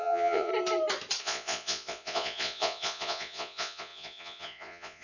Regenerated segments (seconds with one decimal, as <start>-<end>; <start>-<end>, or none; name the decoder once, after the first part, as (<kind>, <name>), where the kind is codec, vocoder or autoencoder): 0.0-0.5 (vocoder, Vocos); 1.2-5.0